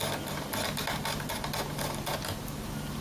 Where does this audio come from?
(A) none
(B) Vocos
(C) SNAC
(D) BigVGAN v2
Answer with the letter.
A